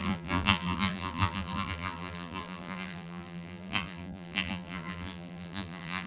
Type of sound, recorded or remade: remade